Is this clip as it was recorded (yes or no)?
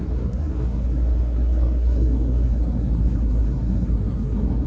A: no